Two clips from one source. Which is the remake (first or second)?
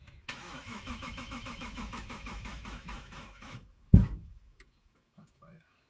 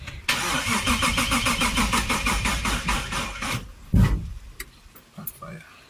first